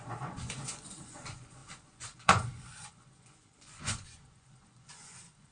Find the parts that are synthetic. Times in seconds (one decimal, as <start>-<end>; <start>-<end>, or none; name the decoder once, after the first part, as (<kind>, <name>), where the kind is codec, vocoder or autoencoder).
0.0-5.5 (vocoder, Vocos)